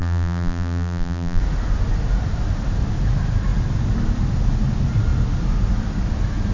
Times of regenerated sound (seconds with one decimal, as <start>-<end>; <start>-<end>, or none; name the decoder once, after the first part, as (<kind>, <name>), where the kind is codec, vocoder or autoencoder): 0.0-1.4 (vocoder, BigVGAN v2)